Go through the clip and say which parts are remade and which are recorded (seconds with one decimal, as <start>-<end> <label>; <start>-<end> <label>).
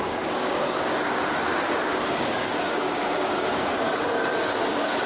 0.0-1.2 remade; 1.2-1.8 recorded; 1.8-5.1 remade